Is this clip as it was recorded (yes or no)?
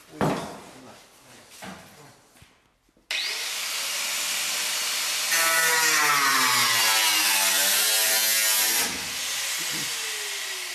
yes